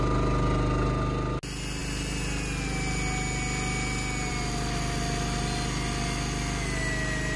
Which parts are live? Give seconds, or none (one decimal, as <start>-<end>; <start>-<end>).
0.0-7.4